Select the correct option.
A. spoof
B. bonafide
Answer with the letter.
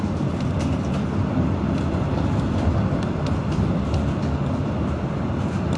B